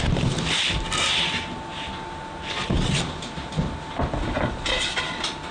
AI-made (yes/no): no